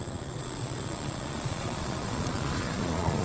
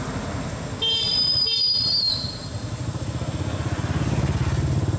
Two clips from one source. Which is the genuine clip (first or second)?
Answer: second